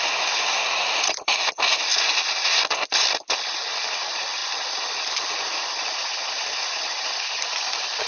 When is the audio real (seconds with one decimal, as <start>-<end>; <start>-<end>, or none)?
none